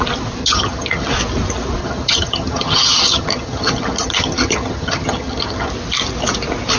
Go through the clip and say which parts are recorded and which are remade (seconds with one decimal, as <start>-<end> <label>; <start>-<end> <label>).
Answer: 0.0-0.4 recorded; 0.4-1.1 remade; 1.1-1.8 recorded; 1.8-5.7 remade; 5.7-6.8 recorded